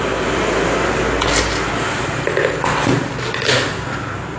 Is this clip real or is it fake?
real